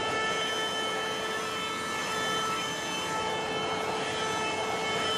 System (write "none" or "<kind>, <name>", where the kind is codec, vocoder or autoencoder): none